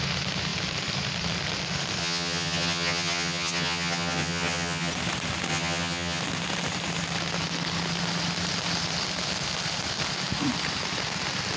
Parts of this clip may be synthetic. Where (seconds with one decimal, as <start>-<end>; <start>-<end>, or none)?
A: 2.0-4.9; 5.5-6.2